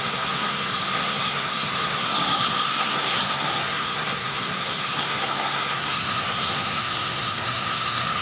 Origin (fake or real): fake